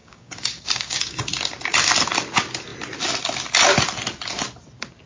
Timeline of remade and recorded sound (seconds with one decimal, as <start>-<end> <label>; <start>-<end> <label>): 0.0-1.2 remade; 1.2-5.1 recorded